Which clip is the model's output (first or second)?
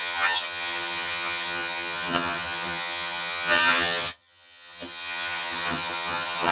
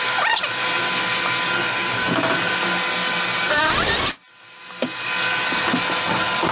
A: first